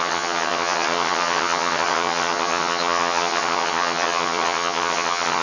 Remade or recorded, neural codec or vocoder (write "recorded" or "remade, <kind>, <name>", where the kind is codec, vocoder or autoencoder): remade, vocoder, HiFi-GAN